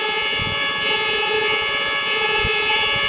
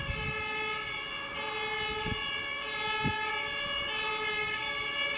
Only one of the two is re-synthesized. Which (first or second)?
first